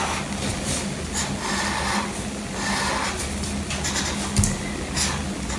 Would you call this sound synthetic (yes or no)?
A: no